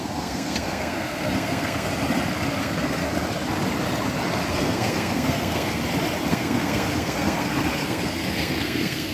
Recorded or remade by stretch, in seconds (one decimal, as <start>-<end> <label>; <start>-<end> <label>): 0.0-1.9 remade; 1.9-2.6 recorded; 2.6-3.0 remade; 3.0-4.5 recorded; 4.5-5.8 remade; 5.8-6.3 recorded; 6.3-9.1 remade